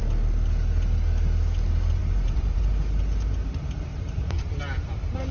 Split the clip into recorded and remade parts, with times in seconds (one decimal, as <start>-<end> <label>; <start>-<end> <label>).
0.0-2.0 recorded; 2.0-3.0 remade; 3.0-3.9 recorded; 3.9-4.5 remade; 4.5-5.3 recorded

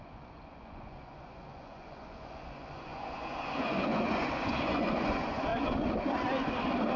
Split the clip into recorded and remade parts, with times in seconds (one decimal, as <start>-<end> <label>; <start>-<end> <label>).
0.0-5.5 remade; 5.5-7.0 recorded

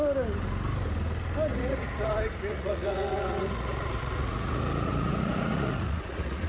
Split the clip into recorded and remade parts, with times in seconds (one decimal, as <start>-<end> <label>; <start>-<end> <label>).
0.0-1.5 recorded; 1.5-2.1 remade; 2.1-2.5 recorded; 2.5-6.5 remade